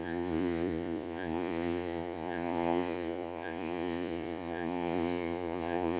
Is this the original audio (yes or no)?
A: no